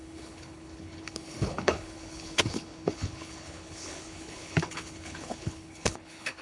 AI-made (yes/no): yes